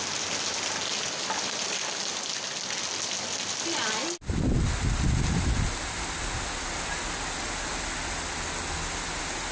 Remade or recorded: recorded